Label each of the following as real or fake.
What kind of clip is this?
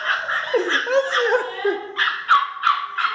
real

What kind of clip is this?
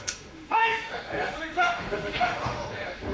fake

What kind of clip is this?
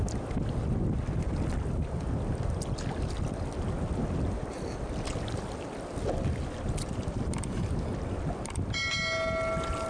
real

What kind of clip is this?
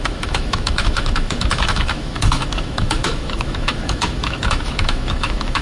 fake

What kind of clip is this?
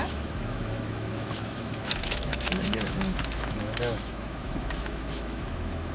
fake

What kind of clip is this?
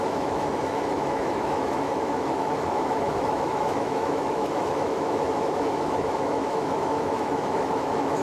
fake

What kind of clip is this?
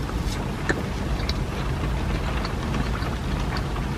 real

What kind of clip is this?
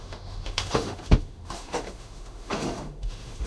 fake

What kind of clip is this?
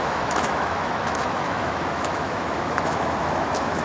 fake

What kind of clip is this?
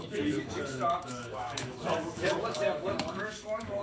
fake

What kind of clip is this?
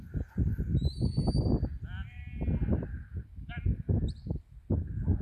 real